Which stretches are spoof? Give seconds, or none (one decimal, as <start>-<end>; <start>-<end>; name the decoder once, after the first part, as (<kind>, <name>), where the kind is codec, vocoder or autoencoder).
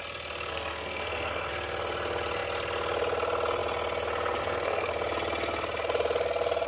0.5-1.5 (codec, SNAC); 4.4-4.9